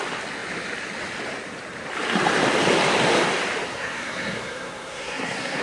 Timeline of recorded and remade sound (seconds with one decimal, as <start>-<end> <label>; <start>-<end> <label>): 0.0-3.7 recorded; 3.7-5.6 remade

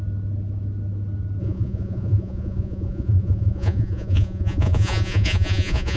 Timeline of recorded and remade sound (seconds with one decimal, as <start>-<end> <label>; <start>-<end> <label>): 0.0-1.4 recorded; 1.4-6.0 remade

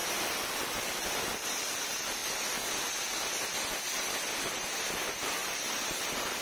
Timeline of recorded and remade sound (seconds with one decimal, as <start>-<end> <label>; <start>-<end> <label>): 0.0-1.8 remade; 1.8-5.4 recorded; 5.4-6.0 remade; 6.0-6.4 recorded

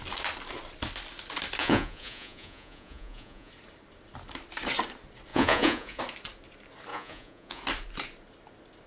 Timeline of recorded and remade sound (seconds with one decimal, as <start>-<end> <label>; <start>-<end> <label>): 0.0-1.6 recorded; 1.6-3.5 remade; 3.5-5.3 recorded; 5.3-6.0 remade; 6.0-6.9 recorded; 6.9-7.6 remade; 7.6-8.9 recorded

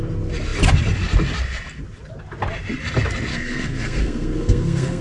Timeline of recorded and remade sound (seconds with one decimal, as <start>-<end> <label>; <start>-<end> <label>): 0.0-3.3 recorded; 3.3-5.0 remade

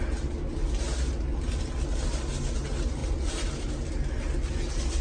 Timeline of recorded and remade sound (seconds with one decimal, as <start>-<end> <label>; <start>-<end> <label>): 0.0-5.0 recorded